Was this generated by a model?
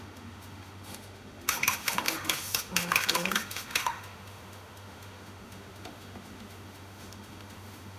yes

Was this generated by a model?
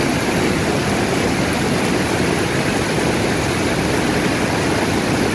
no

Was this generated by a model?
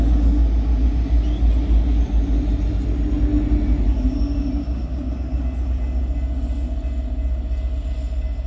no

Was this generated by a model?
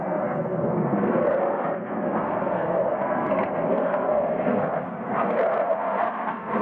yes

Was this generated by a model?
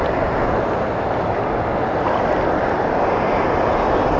no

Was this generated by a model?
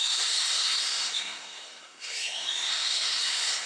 yes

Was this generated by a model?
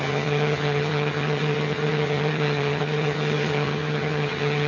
yes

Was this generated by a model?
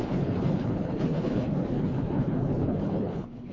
yes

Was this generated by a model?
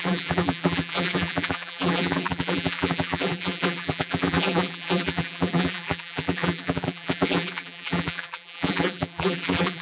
yes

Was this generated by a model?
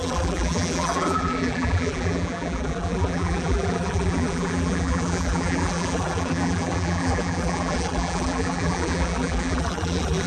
yes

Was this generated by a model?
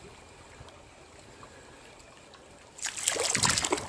no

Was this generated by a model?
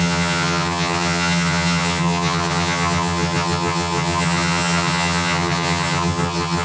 yes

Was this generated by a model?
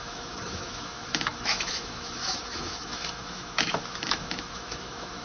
yes